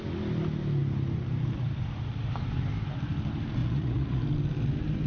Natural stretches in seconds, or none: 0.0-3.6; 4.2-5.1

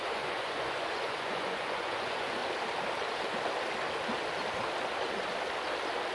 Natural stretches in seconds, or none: 2.4-6.1

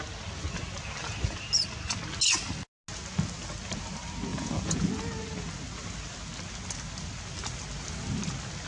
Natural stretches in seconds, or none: 0.0-4.3; 4.9-8.7

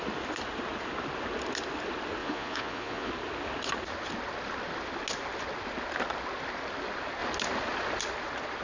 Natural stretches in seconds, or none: 0.0-2.2; 3.1-8.6

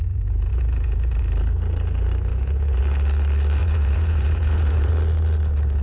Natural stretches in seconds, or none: 0.0-0.5; 1.2-2.3; 2.8-3.6; 4.9-5.8